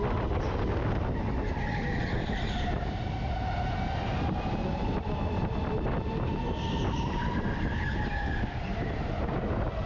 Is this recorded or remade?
recorded